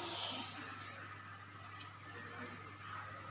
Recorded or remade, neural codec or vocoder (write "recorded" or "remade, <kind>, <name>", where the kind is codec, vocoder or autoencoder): recorded